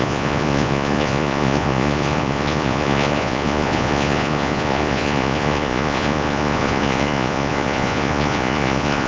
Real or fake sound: fake